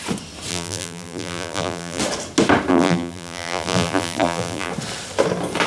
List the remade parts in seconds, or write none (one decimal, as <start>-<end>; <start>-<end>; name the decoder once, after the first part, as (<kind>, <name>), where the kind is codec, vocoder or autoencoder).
0.5-2.0 (vocoder, BigVGAN v2); 2.7-4.7